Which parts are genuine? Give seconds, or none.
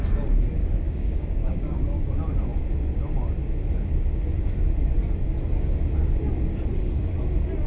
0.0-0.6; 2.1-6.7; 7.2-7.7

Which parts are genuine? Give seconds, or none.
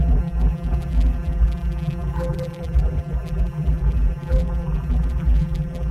none